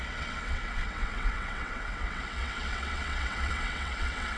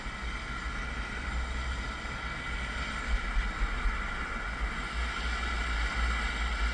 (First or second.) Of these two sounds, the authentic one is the second